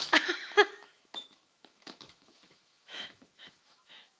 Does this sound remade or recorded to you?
remade